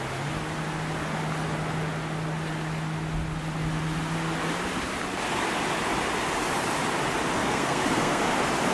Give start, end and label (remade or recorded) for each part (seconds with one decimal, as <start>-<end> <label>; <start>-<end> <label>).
0.0-7.4 recorded; 7.4-8.2 remade; 8.2-8.7 recorded